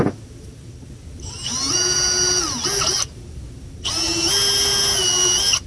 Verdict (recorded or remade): recorded